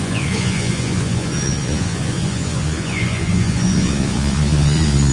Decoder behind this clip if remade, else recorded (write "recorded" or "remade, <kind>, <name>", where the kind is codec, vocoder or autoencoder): remade, vocoder, Vocos